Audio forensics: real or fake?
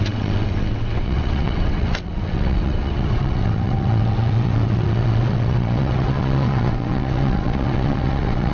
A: fake